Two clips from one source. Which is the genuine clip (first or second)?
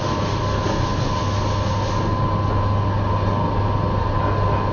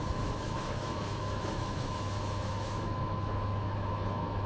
first